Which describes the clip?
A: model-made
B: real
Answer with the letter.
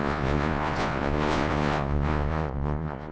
A